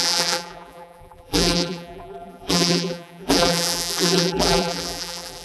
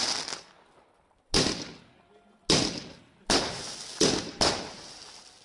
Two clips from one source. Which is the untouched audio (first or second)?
second